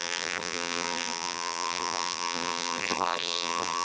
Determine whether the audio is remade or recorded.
remade